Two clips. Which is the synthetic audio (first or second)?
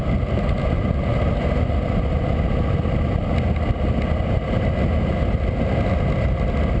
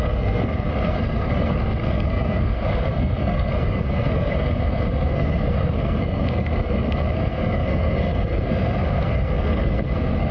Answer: second